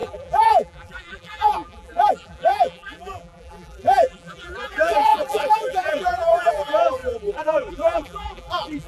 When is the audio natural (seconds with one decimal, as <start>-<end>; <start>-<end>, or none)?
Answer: none